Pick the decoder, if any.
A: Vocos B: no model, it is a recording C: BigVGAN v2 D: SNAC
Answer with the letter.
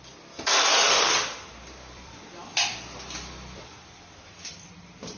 C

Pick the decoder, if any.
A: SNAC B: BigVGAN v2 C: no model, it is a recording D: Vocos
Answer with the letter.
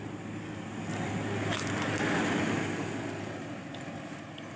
C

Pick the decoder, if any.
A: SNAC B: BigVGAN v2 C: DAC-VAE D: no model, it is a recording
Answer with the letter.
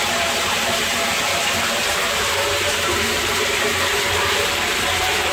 B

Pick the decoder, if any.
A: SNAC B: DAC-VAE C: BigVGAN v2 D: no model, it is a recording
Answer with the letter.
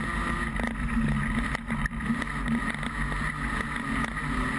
D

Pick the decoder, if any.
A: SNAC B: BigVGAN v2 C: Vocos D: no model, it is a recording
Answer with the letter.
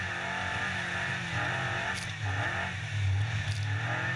D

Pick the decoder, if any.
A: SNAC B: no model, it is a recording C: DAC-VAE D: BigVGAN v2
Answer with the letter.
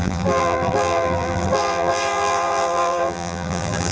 D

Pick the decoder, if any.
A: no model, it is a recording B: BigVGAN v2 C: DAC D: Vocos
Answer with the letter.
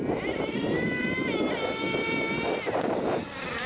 B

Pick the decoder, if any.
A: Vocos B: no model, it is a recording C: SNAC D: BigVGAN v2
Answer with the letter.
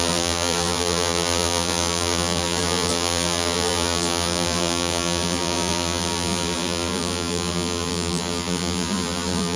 D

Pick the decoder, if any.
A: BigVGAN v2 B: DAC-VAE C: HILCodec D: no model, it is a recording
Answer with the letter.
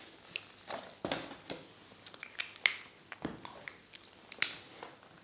D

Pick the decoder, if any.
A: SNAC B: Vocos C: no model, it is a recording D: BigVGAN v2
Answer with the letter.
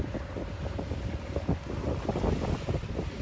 D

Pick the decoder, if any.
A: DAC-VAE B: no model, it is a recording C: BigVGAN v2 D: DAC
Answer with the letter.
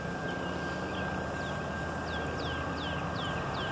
B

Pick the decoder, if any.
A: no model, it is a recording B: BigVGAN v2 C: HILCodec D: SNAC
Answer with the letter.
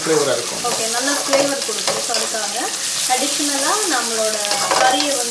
A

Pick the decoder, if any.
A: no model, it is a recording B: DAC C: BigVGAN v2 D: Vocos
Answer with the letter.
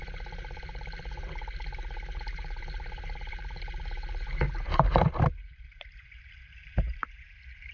C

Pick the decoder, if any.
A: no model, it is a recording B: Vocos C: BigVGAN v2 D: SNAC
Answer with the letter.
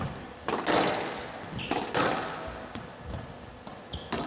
A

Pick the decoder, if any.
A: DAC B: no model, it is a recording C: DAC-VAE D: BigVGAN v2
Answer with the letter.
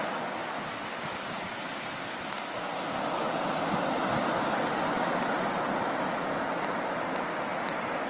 B